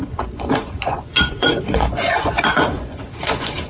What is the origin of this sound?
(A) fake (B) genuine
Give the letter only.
A